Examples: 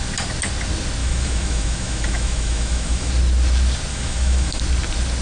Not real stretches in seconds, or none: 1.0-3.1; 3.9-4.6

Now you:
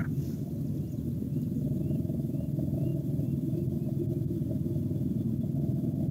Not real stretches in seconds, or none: none

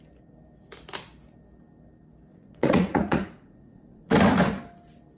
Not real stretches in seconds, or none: 2.3-4.2

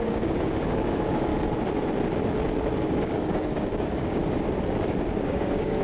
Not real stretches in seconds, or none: 0.0-1.3; 2.8-4.2; 5.2-5.8

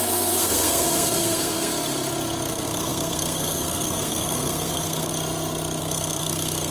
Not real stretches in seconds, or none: 0.0-1.7; 2.5-5.1; 5.8-6.7